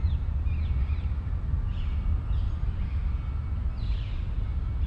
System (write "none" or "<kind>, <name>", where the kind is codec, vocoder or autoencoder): none